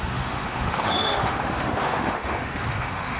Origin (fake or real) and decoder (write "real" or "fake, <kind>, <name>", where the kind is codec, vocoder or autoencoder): fake, autoencoder, DAC-VAE